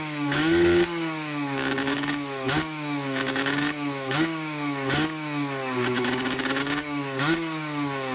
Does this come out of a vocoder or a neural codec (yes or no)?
yes